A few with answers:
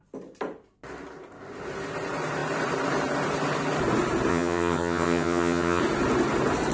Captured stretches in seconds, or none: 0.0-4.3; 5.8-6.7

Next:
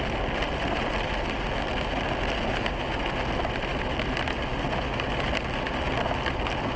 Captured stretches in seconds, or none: 0.0-6.8

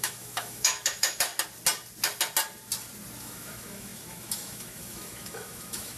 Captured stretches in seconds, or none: 1.3-3.2